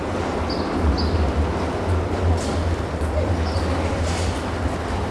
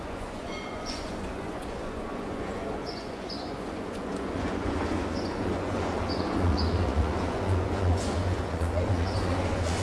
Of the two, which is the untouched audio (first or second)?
first